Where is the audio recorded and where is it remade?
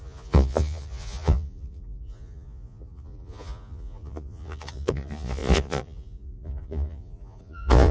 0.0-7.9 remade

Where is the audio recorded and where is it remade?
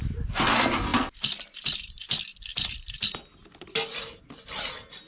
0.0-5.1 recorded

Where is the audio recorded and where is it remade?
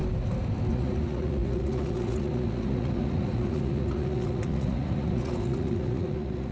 0.0-0.7 recorded; 0.7-6.5 remade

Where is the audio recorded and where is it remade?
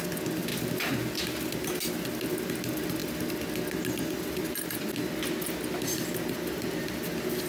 0.0-7.5 recorded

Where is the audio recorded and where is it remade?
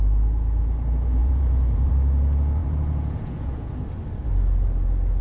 0.0-1.2 recorded; 1.2-1.9 remade; 1.9-2.6 recorded; 2.6-3.7 remade; 3.7-5.2 recorded